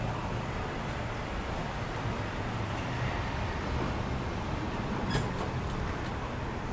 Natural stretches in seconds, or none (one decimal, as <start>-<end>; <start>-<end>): 0.0-6.7